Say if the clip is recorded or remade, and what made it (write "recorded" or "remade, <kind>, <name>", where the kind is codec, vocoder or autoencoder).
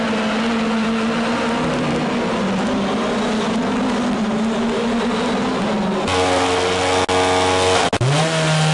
recorded